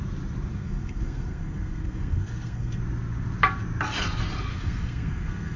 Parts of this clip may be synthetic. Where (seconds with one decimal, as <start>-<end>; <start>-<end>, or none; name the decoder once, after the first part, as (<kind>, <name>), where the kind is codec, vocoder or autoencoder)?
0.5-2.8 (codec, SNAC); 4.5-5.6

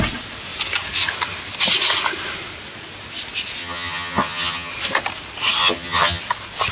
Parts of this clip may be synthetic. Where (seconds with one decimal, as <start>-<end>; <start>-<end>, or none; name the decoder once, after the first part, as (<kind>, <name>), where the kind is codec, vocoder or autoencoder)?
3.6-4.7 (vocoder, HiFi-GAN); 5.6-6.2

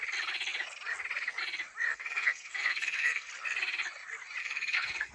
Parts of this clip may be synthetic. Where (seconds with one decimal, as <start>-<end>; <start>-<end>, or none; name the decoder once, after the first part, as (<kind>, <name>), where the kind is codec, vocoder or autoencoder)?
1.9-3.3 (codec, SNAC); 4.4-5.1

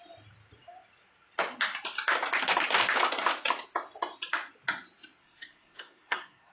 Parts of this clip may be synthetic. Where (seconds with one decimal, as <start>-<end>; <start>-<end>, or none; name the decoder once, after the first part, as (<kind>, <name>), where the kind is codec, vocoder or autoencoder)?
5.2-6.5 (codec, SNAC)

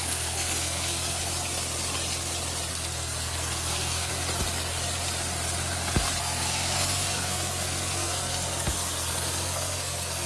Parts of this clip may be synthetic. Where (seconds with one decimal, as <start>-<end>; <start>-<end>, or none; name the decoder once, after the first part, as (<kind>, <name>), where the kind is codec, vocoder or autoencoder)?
0.0-1.2 (codec, SNAC); 2.7-4.1; 6.2-10.3